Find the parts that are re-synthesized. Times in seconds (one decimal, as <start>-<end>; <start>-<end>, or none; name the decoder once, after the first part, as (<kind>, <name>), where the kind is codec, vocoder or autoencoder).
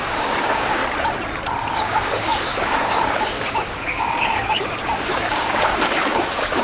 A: 0.0-0.8 (codec, DAC); 1.7-6.6